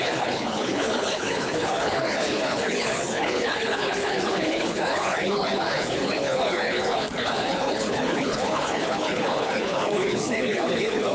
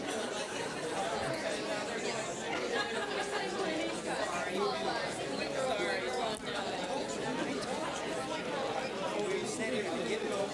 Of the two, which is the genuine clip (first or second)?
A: second